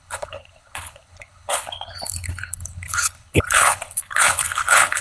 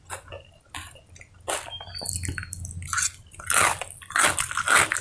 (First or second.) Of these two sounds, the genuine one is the second